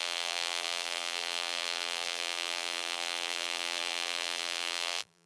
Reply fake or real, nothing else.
fake